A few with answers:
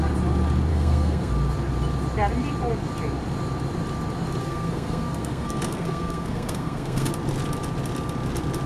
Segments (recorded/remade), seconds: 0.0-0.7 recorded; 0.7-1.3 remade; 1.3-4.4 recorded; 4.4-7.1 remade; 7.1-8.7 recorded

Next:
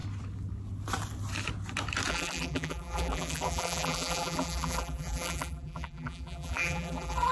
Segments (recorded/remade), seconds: 0.0-2.1 recorded; 2.1-7.3 remade

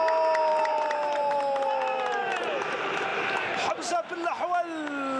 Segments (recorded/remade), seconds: 0.0-0.5 recorded; 0.5-1.4 remade; 1.4-3.1 recorded; 3.1-3.7 remade; 3.7-5.2 recorded

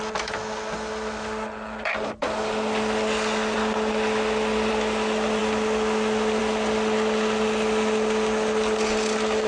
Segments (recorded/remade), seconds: 0.0-9.5 recorded

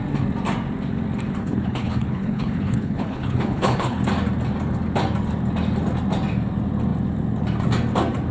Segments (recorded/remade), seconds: 0.0-1.4 recorded; 1.4-4.0 remade; 4.0-8.3 recorded

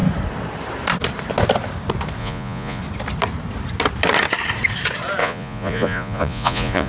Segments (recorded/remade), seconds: 0.0-2.2 recorded; 2.2-2.8 remade; 2.8-5.2 recorded; 5.2-6.9 remade